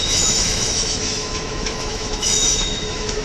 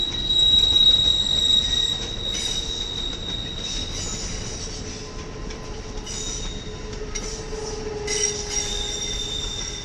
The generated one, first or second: first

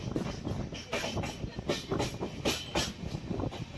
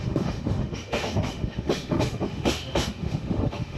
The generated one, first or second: second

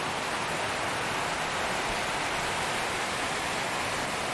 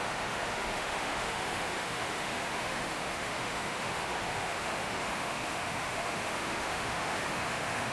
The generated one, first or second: second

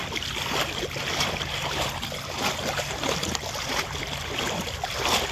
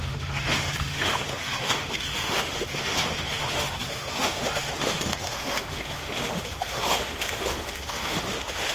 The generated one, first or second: second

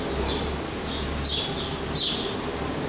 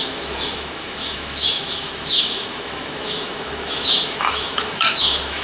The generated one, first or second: second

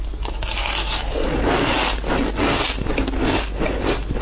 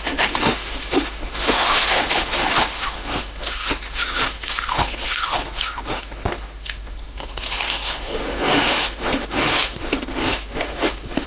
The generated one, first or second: second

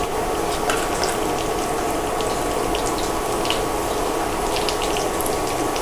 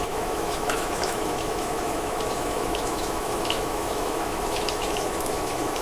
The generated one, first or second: second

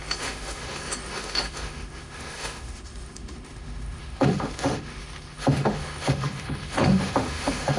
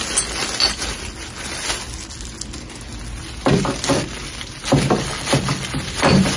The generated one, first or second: first